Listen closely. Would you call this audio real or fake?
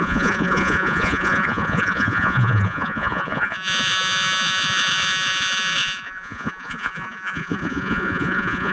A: fake